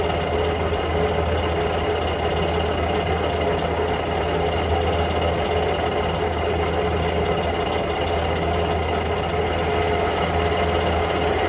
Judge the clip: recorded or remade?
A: recorded